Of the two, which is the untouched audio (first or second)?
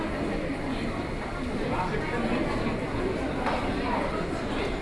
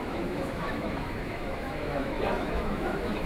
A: first